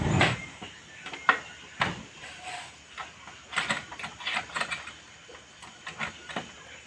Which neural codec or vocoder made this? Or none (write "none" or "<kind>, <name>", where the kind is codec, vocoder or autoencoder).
none